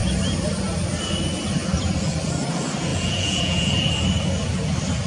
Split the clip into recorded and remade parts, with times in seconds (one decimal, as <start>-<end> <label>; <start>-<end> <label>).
0.0-2.9 recorded; 2.9-3.9 remade; 3.9-5.1 recorded